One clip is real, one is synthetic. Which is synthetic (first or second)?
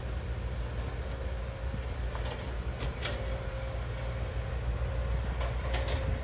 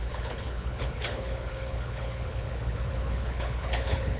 second